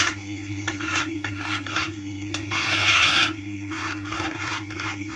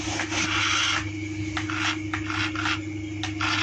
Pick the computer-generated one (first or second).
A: first